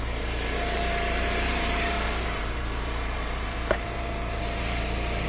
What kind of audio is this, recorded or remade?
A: remade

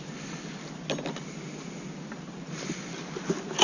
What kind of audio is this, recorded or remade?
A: recorded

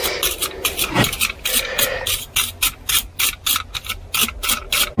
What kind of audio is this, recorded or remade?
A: recorded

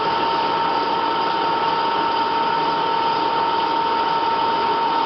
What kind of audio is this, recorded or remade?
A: recorded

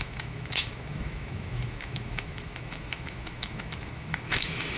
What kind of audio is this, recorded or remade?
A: remade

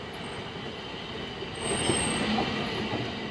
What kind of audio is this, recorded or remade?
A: recorded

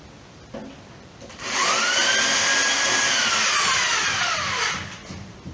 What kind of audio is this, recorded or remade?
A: recorded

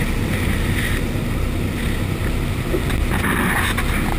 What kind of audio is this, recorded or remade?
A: recorded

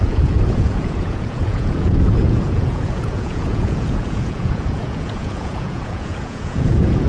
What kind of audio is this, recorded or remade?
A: remade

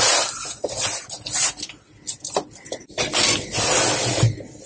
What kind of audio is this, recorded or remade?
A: recorded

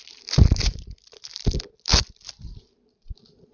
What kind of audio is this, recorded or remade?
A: recorded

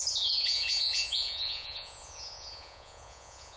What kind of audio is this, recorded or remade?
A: remade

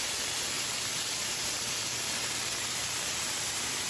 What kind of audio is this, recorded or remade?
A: remade